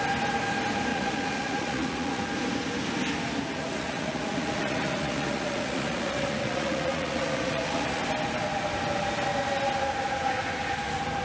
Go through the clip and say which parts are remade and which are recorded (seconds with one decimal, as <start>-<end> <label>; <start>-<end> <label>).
0.0-0.9 recorded; 0.9-2.2 remade; 2.2-3.5 recorded; 3.5-8.0 remade; 8.0-11.2 recorded